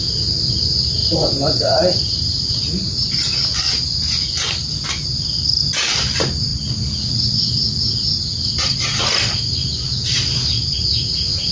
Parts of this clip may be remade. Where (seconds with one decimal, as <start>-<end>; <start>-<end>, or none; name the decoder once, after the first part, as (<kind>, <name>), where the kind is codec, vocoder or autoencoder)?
1.0-2.5 (vocoder, BigVGAN v2)